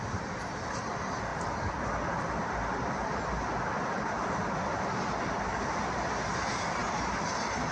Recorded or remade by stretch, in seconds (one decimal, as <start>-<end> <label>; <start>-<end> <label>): 0.0-7.7 recorded